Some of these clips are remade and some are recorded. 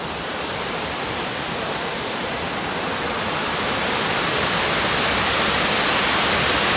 recorded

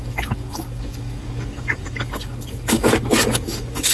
remade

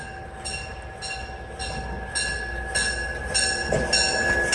recorded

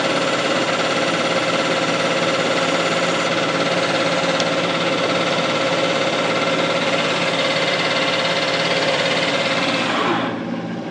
recorded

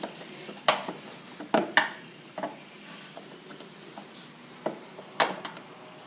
recorded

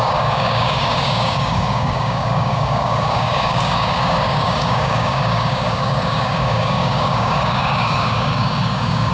remade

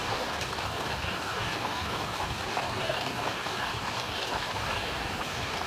remade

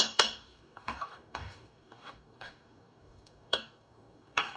remade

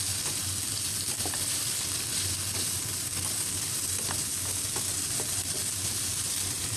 recorded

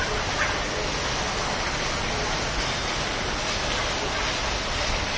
recorded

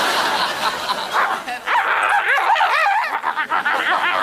recorded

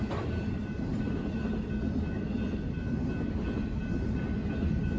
recorded